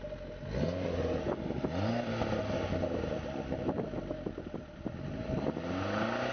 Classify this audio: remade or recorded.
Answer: recorded